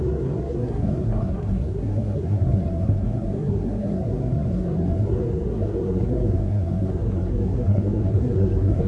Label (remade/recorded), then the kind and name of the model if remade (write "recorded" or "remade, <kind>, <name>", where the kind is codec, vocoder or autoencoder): remade, codec, SNAC